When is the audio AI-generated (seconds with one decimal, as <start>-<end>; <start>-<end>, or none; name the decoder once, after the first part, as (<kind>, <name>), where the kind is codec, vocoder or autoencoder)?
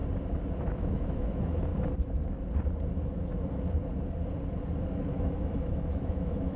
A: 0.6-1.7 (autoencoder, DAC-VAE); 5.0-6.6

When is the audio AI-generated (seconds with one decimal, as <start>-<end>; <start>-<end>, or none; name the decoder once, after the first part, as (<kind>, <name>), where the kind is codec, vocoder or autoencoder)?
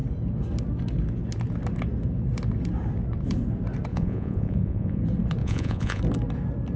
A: 3.9-5.0 (vocoder, Vocos); 5.4-6.0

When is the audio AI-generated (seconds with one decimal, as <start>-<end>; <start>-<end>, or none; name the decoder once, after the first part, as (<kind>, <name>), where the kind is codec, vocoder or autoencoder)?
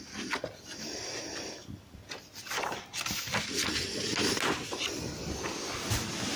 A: 2.3-3.2 (vocoder, BigVGAN v2)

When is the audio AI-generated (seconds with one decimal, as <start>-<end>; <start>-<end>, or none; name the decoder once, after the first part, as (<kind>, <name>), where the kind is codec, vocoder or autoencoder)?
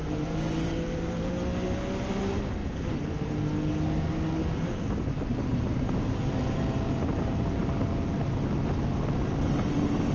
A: 0.0-1.3 (vocoder, BigVGAN v2); 2.6-3.1; 4.4-7.9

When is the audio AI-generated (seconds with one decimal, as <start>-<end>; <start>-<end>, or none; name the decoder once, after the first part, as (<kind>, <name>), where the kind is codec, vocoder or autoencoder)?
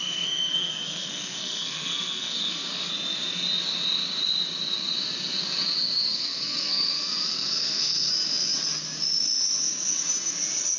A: 0.0-2.9 (codec, SNAC); 6.1-8.1